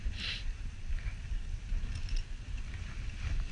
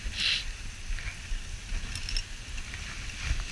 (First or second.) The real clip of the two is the second